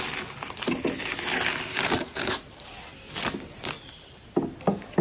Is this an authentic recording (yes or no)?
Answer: yes